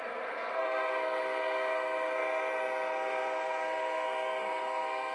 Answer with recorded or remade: remade